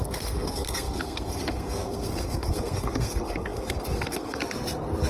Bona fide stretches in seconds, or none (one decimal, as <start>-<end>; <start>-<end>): 4.4-5.1